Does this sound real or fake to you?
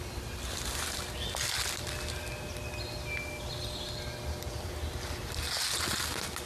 real